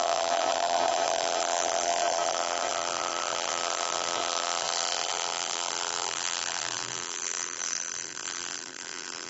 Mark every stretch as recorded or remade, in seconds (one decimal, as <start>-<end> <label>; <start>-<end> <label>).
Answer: 0.0-9.3 remade